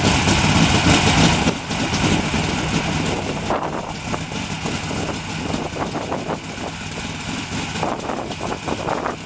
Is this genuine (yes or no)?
yes